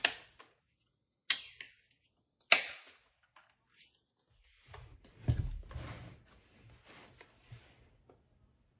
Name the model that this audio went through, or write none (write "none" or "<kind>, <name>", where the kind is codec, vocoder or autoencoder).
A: none